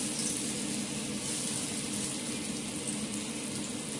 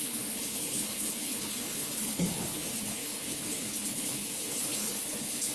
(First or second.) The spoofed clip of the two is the second